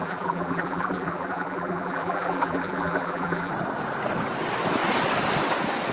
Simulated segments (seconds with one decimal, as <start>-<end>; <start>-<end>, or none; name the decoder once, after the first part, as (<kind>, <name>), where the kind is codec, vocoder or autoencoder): 0.0-3.5 (vocoder, BigVGAN v2)